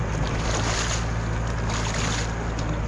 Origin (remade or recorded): recorded